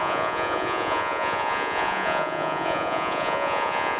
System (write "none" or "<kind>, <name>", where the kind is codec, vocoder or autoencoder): vocoder, Vocos